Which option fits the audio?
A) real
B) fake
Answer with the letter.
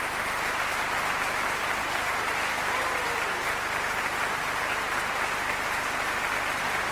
A